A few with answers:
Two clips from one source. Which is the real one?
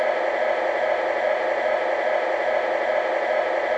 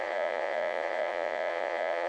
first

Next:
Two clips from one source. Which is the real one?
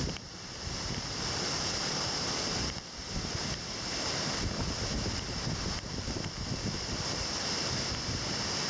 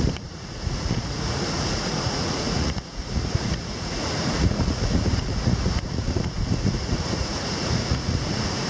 first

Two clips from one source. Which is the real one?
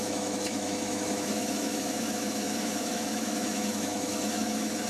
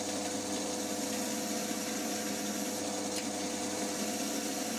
second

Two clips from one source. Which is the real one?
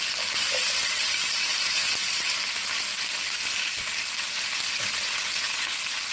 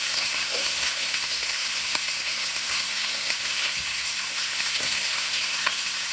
first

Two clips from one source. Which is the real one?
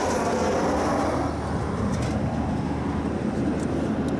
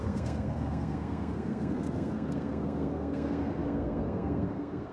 first